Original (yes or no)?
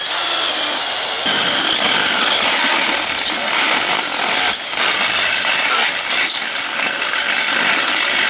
yes